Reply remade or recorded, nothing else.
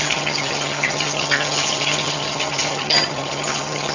remade